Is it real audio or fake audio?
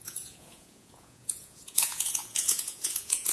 fake